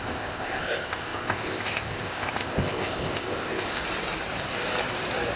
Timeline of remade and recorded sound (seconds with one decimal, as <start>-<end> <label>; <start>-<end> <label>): 0.0-3.8 remade; 3.8-5.4 recorded